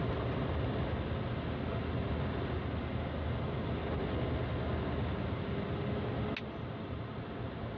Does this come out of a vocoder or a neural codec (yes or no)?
no